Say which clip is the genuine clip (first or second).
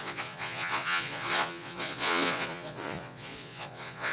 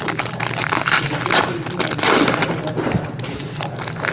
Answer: second